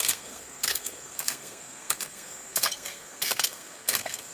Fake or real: fake